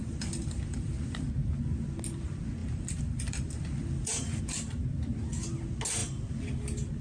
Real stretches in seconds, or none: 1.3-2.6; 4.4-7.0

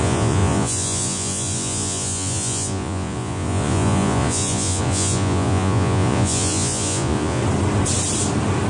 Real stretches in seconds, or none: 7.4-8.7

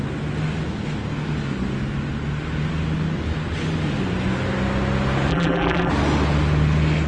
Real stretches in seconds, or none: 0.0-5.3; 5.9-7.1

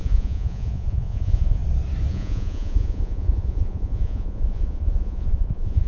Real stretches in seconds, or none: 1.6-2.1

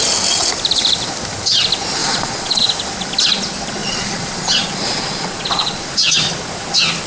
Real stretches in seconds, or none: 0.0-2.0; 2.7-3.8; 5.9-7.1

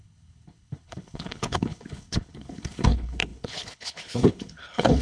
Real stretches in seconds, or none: none

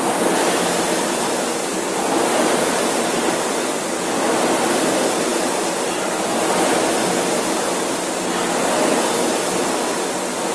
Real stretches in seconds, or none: 0.0-10.5

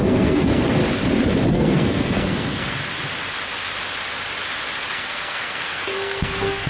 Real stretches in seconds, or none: 0.8-1.5; 2.8-4.9